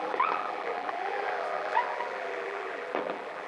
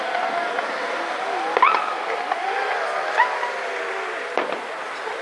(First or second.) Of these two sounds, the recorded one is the second